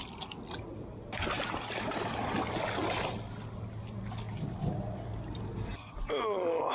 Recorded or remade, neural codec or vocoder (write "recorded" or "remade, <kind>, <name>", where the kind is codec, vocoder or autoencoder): recorded